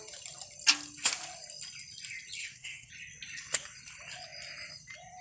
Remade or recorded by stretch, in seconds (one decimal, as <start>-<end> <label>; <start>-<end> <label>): 0.0-2.4 recorded; 2.4-2.9 remade; 2.9-5.2 recorded